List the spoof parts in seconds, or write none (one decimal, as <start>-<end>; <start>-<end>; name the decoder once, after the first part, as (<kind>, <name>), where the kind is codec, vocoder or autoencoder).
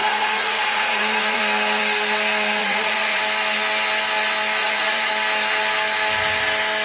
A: 0.0-1.4 (vocoder, Vocos); 2.6-3.2; 4.6-5.1